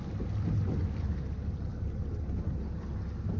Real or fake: real